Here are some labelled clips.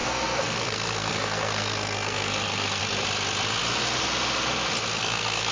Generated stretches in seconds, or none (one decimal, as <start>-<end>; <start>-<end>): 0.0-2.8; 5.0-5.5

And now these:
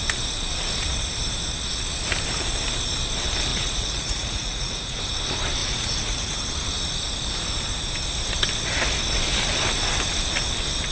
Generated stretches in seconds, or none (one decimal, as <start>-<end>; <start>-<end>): 3.5-5.0; 5.6-6.4

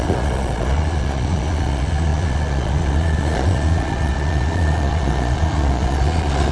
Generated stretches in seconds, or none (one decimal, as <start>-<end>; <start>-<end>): 0.0-6.5

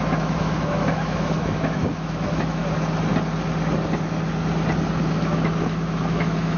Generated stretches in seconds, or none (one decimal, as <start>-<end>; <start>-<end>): 0.0-2.6; 5.1-6.6

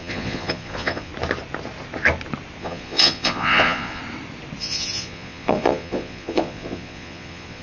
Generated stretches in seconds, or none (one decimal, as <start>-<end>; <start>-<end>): 0.0-1.1; 2.6-4.0; 4.6-7.6